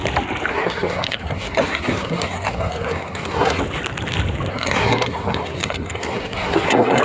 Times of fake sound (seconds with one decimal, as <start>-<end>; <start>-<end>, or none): 0.5-3.6; 4.5-7.0